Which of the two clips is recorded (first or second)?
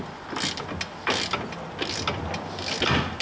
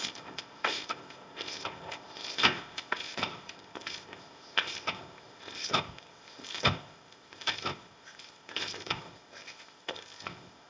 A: first